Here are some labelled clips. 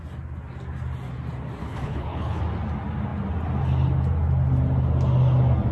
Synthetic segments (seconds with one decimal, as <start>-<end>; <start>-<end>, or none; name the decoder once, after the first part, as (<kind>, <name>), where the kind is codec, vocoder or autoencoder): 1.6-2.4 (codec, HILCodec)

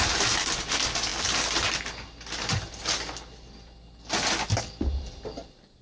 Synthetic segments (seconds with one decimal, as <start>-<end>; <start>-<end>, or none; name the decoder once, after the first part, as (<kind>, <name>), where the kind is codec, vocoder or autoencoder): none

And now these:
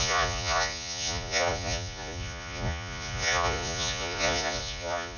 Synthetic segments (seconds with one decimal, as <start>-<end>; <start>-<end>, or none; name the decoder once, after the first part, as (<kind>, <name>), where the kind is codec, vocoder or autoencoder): 0.0-5.2 (vocoder, Vocos)

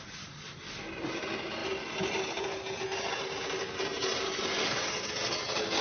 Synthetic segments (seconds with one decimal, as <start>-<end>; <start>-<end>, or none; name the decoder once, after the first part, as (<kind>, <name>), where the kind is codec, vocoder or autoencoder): none

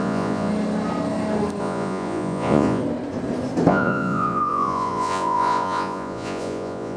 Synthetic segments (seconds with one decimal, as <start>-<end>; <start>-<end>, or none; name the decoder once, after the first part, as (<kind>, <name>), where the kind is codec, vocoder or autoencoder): 0.0-0.5 (vocoder, Vocos); 1.6-2.8; 3.7-7.0

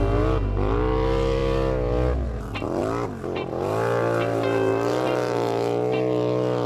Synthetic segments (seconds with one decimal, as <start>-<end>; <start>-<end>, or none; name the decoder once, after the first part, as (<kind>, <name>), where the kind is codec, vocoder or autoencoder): none

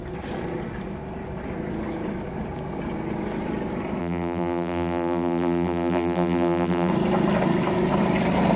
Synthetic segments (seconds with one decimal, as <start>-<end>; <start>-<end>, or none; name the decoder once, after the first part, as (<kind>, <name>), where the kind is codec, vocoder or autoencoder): 4.0-6.9 (vocoder, BigVGAN v2)